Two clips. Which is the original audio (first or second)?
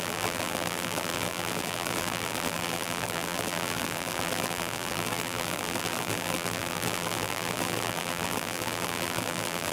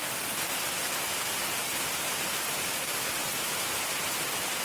second